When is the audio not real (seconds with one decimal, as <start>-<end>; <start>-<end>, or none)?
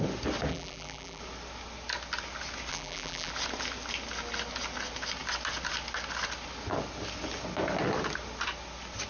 0.5-1.2; 2.7-3.3